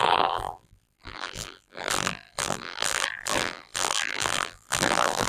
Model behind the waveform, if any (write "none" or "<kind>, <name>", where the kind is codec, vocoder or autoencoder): vocoder, BigVGAN v2